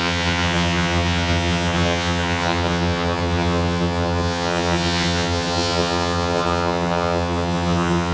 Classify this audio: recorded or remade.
remade